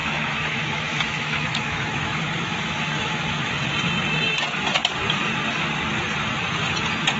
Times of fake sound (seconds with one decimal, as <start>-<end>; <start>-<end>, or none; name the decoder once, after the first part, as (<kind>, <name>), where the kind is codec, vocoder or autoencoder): 0.0-3.5 (autoencoder, DAC-VAE)